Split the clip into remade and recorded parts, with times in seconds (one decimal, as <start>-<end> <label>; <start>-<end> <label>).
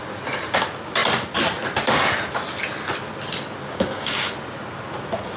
0.0-3.6 recorded; 3.6-4.3 remade; 4.3-5.4 recorded